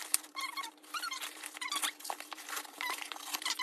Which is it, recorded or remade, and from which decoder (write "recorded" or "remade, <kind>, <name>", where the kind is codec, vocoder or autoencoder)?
remade, vocoder, BigVGAN v2